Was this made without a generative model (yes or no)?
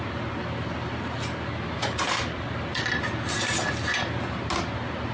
yes